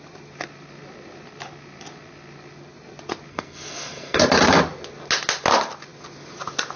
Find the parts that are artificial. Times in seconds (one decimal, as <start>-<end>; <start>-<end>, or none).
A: 3.3-4.2